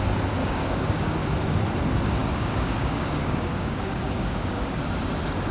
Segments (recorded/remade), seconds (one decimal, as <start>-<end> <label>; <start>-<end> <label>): 0.0-0.4 recorded; 0.4-1.3 remade; 1.3-2.2 recorded; 2.2-4.8 remade; 4.8-5.5 recorded